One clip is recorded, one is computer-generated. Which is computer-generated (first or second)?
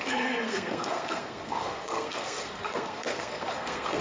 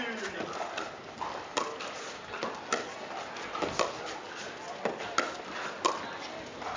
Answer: first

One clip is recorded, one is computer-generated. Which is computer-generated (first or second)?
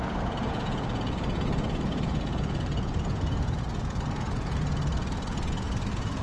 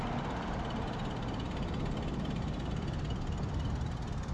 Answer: first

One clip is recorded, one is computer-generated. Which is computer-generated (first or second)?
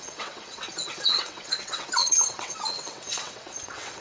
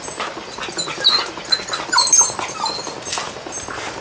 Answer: first